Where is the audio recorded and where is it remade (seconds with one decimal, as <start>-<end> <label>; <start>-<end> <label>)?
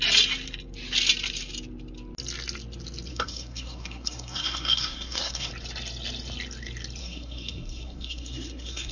0.0-3.1 recorded; 3.1-5.5 remade; 5.5-7.0 recorded; 7.0-8.9 remade